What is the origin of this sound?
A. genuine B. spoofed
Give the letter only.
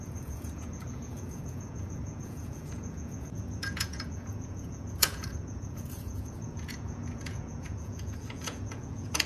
B